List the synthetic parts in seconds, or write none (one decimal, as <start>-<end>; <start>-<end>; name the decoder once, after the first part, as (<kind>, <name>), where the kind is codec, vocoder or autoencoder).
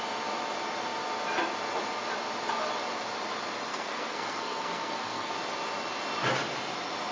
3.7-5.3 (codec, SNAC)